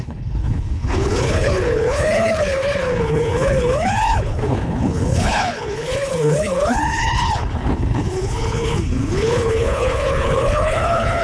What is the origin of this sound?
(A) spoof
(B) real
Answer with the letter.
A